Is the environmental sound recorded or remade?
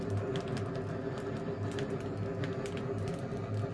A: recorded